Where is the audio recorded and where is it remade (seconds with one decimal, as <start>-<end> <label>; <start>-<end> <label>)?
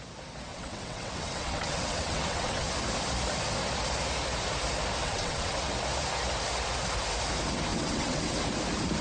0.0-0.5 recorded; 0.5-2.7 remade; 2.7-5.0 recorded; 5.0-5.7 remade; 5.7-7.7 recorded; 7.7-8.4 remade; 8.4-9.0 recorded